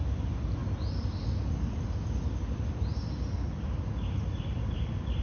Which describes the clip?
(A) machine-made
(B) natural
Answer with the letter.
B